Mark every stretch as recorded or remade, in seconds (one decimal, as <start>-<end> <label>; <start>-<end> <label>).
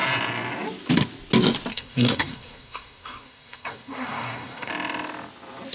0.0-1.7 recorded; 1.7-4.7 remade; 4.7-5.7 recorded